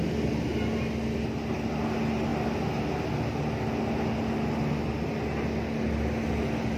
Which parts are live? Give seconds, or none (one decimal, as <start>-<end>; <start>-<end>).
0.0-6.8